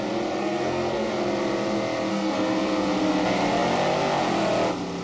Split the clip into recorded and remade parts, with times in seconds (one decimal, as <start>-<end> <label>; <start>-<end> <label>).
0.0-0.4 recorded; 0.4-1.1 remade; 1.1-2.1 recorded; 2.1-2.9 remade; 2.9-5.0 recorded